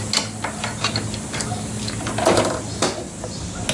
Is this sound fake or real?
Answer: real